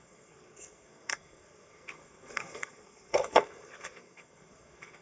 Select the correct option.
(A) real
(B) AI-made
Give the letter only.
B